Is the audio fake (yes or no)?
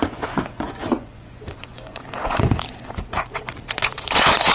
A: yes